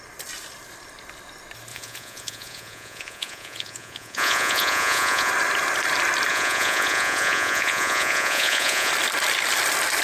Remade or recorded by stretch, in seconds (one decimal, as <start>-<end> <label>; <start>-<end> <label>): 0.0-1.7 recorded; 1.7-5.3 remade; 5.3-6.3 recorded; 6.3-8.9 remade; 8.9-10.0 recorded